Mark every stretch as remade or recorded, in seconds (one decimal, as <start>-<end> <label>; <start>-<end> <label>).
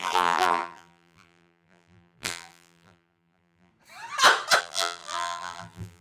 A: 0.0-3.7 remade; 3.7-4.6 recorded; 4.6-6.0 remade